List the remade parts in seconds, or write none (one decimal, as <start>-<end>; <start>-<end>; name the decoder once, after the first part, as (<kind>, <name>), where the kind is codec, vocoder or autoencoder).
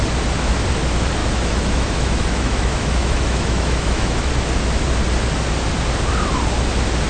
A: 1.2-4.3 (autoencoder, DAC-VAE)